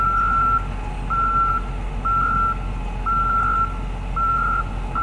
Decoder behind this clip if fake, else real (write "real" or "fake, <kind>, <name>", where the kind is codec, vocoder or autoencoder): real